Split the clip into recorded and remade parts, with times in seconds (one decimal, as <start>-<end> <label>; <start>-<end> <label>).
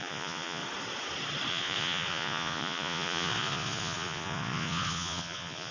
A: 0.0-0.6 remade; 0.6-1.5 recorded; 1.5-5.7 remade